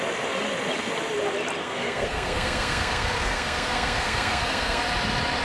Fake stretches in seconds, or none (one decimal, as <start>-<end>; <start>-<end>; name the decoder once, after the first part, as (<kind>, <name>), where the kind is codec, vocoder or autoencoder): 1.6-4.8 (codec, SNAC)